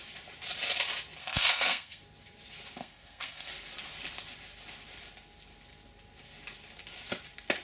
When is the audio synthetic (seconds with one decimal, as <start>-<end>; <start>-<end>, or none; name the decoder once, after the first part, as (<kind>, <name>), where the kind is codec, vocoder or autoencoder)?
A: 1.2-2.0 (codec, SNAC); 2.8-3.5